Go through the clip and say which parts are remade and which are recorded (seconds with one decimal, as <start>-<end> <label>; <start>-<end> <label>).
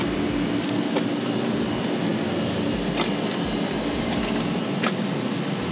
0.0-5.7 recorded